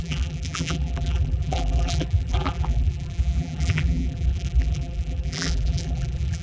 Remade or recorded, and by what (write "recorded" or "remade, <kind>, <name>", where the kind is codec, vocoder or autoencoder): remade, vocoder, BigVGAN v2